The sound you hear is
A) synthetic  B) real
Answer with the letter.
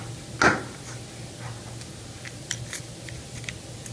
B